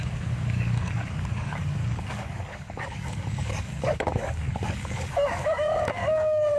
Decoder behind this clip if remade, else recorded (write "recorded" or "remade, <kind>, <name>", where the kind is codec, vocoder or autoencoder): remade, codec, DAC